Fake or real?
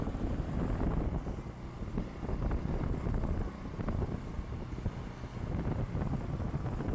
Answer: real